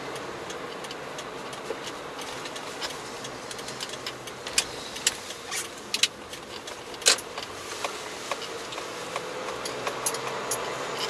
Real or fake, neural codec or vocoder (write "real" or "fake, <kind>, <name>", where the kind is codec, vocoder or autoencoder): real